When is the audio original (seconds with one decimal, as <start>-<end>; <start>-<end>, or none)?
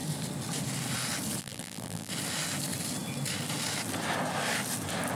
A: 0.0-1.4; 2.1-5.2